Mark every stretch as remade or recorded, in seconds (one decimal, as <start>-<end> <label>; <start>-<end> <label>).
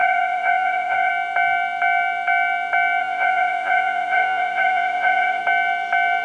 0.0-1.1 remade; 1.1-3.0 recorded; 3.0-5.4 remade; 5.4-6.2 recorded